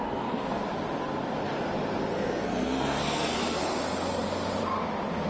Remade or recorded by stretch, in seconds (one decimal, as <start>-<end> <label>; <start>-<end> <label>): 0.0-0.6 remade; 0.6-2.1 recorded; 2.1-3.6 remade; 3.6-5.3 recorded